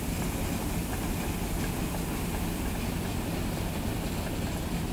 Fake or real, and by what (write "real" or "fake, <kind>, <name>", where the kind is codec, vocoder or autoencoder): real